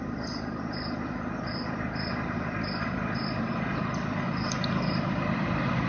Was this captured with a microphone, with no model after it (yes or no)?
yes